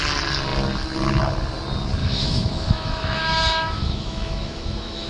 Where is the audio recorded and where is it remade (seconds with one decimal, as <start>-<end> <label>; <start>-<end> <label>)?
0.0-2.0 recorded; 2.0-5.1 remade